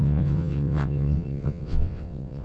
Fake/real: fake